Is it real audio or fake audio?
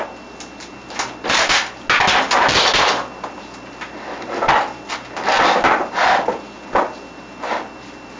real